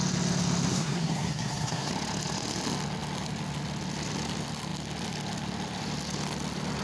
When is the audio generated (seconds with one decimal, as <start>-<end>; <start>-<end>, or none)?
0.7-1.9